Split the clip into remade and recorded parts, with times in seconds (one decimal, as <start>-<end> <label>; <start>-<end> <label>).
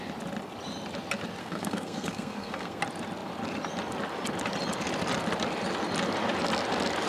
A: 0.0-1.4 recorded; 1.4-2.8 remade; 2.8-7.1 recorded